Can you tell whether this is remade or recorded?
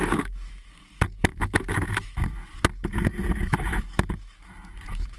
remade